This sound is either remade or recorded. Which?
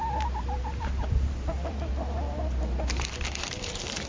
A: remade